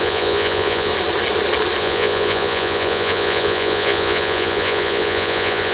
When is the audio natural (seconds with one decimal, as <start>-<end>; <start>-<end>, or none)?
0.9-1.8